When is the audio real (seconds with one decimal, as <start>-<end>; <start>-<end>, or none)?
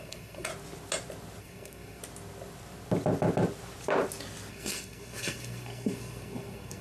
0.5-1.4; 2.0-4.5